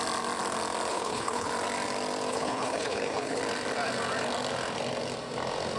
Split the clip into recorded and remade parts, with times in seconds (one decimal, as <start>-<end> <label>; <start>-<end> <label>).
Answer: 0.0-0.9 recorded; 0.9-1.5 remade; 1.5-2.3 recorded; 2.3-3.4 remade; 3.4-5.8 recorded